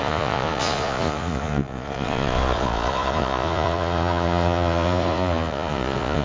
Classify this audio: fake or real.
fake